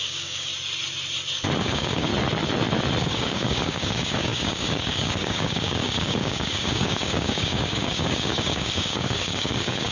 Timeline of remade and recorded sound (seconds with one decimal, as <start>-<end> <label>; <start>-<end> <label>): 0.0-0.5 remade; 0.5-1.6 recorded; 1.6-2.1 remade; 2.1-3.0 recorded; 3.0-9.9 remade